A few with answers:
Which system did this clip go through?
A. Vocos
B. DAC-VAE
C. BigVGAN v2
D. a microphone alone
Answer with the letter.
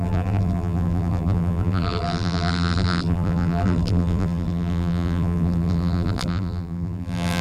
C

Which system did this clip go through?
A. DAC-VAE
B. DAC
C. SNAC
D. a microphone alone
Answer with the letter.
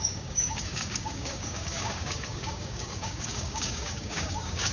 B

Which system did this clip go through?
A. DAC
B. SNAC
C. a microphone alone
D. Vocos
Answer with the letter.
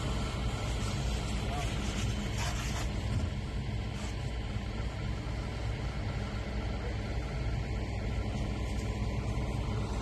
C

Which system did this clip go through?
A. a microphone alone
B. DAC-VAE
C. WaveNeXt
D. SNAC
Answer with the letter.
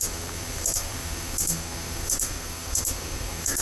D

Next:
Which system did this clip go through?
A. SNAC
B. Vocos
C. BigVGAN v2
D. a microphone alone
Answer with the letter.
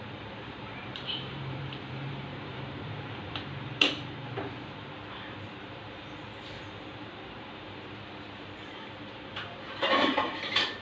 C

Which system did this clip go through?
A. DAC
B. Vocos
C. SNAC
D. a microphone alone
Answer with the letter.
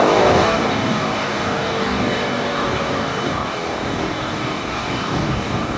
A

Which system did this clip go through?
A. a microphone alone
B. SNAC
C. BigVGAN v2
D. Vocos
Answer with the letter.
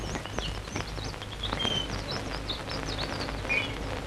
A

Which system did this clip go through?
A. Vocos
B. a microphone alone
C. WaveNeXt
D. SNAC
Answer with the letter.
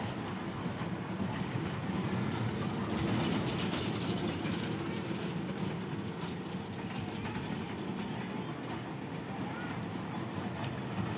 B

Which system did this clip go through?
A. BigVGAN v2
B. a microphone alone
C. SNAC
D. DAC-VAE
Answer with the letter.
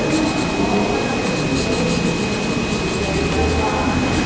B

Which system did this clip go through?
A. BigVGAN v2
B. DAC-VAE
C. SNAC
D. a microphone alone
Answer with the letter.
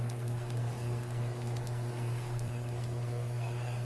C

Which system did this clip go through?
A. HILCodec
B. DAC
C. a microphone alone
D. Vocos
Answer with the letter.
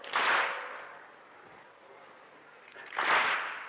C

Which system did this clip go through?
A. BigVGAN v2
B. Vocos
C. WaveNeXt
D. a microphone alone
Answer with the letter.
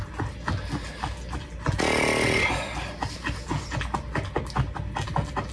D